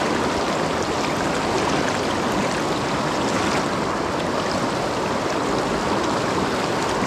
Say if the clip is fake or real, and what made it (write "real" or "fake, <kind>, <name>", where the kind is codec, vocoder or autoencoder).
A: real